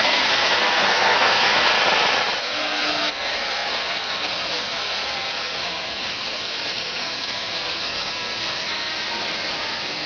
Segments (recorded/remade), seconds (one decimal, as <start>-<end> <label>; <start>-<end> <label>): 0.0-1.7 remade; 1.7-2.4 recorded; 2.4-8.9 remade; 8.9-9.5 recorded; 9.5-10.1 remade